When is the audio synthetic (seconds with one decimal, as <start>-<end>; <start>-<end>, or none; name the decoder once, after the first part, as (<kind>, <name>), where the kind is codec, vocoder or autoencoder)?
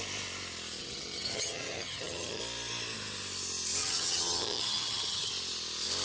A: 0.8-2.4 (vocoder, HiFi-GAN); 3.8-5.3